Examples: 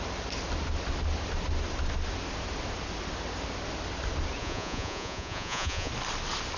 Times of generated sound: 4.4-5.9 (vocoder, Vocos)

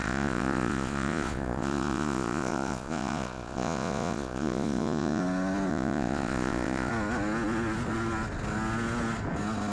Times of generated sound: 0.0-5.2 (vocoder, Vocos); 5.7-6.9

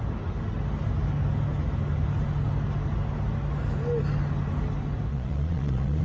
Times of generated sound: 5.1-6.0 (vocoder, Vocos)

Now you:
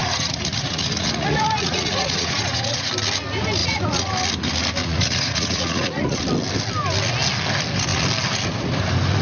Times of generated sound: 0.0-2.9 (vocoder, Vocos); 3.6-4.1; 4.8-6.2

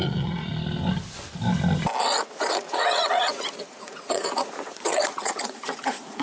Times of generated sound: 0.0-0.5 (vocoder, Vocos); 2.5-6.2

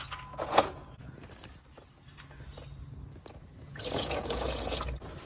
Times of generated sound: 0.0-1.3 (vocoder, Vocos); 3.4-4.8